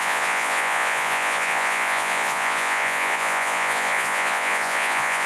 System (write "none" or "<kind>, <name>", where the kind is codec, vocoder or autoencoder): vocoder, Vocos